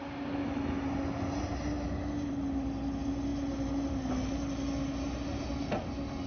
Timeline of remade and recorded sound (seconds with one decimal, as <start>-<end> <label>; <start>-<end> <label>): 0.0-6.3 recorded